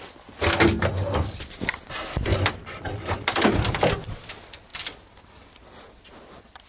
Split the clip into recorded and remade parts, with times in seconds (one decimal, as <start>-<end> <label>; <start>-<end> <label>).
0.0-2.3 recorded; 2.3-4.3 remade; 4.3-4.7 recorded; 4.7-6.0 remade; 6.0-6.7 recorded